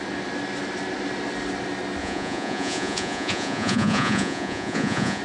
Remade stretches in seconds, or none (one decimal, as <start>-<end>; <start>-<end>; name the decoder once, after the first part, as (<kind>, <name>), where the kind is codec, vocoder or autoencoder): 2.0-5.2 (vocoder, Vocos)